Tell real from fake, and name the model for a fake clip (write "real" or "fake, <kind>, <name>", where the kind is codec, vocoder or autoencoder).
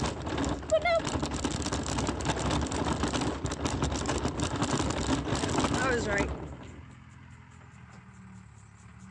real